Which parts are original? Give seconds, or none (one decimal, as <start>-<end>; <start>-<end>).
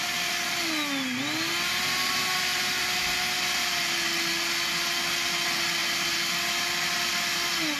0.0-7.8